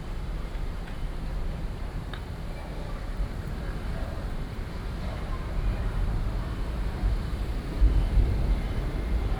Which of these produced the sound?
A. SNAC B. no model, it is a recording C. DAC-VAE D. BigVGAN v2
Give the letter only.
D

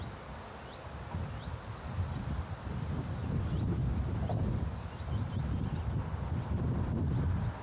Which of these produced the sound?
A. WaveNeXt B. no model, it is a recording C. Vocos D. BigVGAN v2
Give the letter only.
D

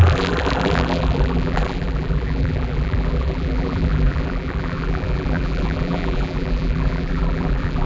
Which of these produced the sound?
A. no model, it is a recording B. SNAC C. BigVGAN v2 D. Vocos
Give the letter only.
C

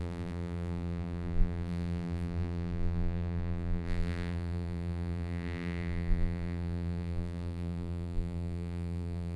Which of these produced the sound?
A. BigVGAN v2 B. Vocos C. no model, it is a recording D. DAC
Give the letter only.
A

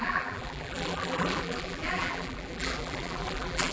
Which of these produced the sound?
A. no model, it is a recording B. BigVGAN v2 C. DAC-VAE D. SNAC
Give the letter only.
B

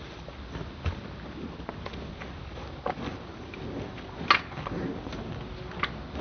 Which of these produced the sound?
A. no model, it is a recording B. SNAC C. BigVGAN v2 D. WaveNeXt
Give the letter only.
A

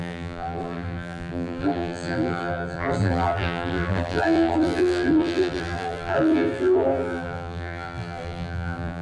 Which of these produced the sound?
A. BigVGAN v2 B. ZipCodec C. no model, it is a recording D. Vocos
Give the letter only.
A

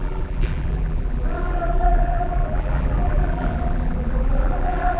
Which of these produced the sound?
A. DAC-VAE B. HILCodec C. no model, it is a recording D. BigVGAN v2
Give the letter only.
D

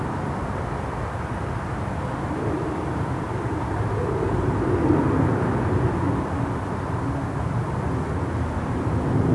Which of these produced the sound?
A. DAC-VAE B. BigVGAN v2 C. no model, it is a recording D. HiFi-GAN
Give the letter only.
C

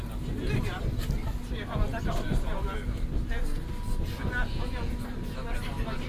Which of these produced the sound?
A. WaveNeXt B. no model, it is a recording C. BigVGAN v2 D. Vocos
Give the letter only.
B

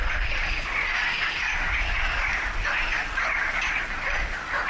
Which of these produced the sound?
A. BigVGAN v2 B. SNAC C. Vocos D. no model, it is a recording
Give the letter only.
D